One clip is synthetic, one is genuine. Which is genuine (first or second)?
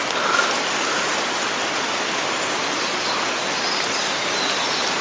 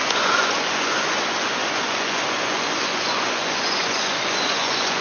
first